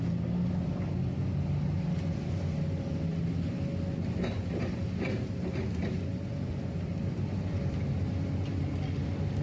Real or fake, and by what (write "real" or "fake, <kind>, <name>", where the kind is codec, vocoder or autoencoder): real